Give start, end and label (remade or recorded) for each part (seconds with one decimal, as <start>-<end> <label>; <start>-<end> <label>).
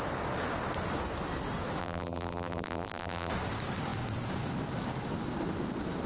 0.0-1.8 recorded; 1.8-3.3 remade; 3.3-6.1 recorded